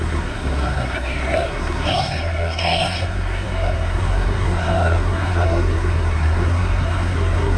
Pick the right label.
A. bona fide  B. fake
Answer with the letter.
B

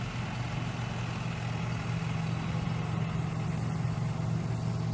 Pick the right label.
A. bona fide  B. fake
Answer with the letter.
A